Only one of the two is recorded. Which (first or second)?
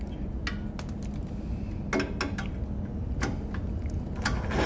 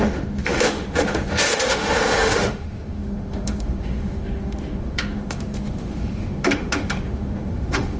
first